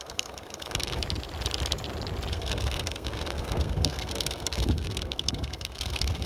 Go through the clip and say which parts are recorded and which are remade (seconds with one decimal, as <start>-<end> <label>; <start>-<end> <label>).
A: 0.0-1.0 remade; 1.0-2.3 recorded; 2.3-6.3 remade